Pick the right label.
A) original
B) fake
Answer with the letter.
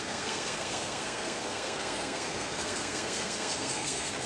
B